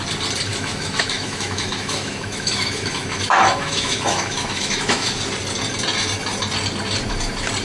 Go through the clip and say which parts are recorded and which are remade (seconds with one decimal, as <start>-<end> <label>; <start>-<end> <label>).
0.0-0.5 recorded; 0.5-5.1 remade; 5.1-7.6 recorded